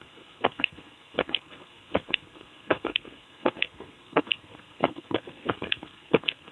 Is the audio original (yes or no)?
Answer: no